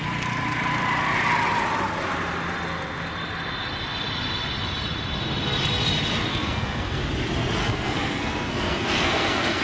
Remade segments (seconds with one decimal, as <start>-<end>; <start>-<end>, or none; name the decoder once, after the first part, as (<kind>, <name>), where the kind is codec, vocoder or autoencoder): 6.3-7.0 (codec, SNAC); 7.6-9.6